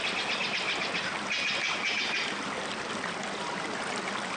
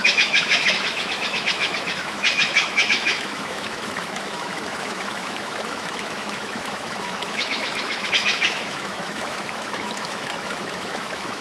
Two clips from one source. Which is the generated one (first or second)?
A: second